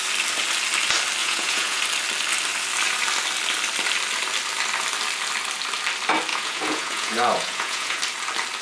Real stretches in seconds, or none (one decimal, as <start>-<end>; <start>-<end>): 0.0-1.2; 1.8-6.3; 8.0-8.6